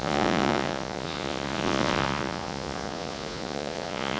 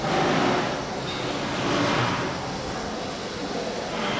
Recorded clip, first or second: second